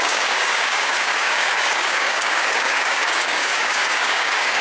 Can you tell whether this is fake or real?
fake